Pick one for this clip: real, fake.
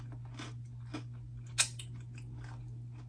real